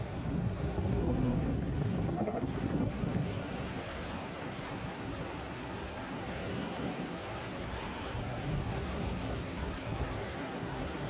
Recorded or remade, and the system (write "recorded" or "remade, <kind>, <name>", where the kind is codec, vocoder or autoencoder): remade, codec, SNAC